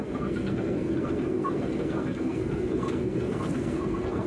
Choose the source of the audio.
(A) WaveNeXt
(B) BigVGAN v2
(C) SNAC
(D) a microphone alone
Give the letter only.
C